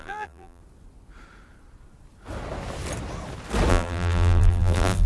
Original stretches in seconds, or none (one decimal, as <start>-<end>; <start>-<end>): 0.6-3.7